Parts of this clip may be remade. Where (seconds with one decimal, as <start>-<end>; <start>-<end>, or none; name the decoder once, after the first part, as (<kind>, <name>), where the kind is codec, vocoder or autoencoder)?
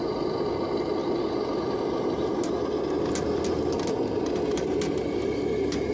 none